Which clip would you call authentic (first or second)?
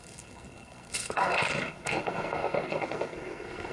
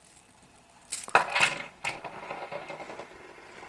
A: second